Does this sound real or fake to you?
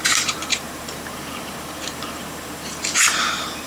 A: fake